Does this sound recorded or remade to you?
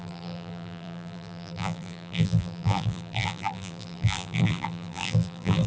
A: remade